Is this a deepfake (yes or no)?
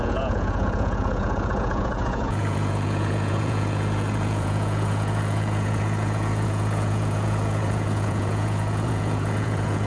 yes